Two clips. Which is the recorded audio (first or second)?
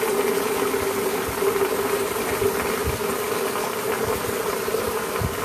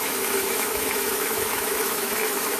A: first